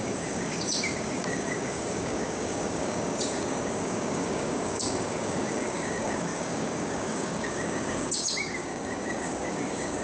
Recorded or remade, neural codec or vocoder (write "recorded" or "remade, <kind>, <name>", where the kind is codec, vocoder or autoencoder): remade, codec, DAC